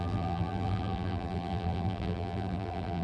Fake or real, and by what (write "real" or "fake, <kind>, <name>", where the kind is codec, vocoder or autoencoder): fake, vocoder, BigVGAN v2